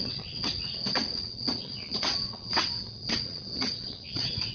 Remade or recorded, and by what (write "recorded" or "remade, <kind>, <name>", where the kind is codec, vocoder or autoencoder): remade, vocoder, WaveNeXt